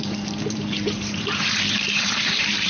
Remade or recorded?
remade